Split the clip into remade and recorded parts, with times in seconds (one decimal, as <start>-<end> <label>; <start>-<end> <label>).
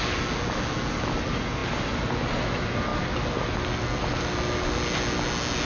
0.0-5.6 recorded